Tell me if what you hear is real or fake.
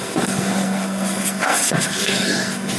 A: fake